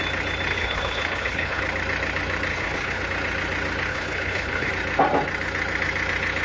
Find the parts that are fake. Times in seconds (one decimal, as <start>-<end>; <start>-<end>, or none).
0.5-1.6; 2.5-3.0; 3.9-4.7